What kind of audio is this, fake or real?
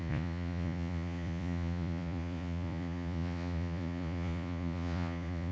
fake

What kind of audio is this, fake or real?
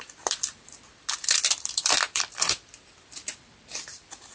fake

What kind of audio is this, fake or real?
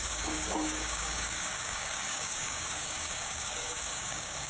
fake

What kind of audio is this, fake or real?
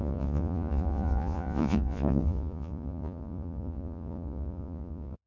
fake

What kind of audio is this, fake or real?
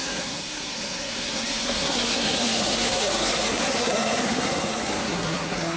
fake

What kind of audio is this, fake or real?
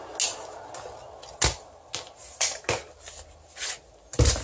real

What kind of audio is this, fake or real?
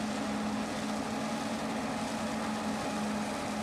real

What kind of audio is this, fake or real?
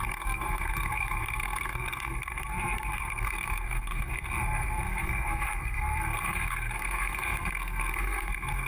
fake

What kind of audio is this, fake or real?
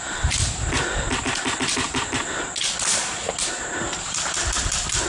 real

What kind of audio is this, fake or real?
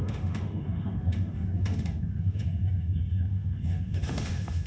fake